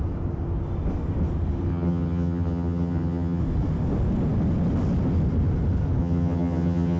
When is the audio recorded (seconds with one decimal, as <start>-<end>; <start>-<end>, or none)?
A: 0.0-1.7; 3.4-6.0